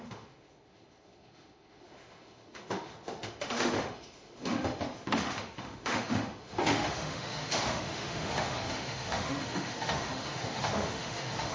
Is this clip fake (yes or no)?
yes